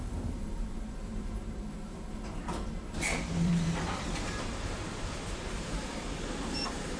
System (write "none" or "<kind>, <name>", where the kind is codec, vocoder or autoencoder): vocoder, BigVGAN v2